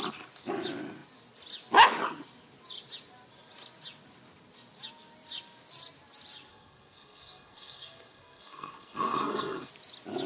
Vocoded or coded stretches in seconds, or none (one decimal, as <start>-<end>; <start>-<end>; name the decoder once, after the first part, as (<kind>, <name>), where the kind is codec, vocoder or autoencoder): 6.5-9.7 (codec, SNAC)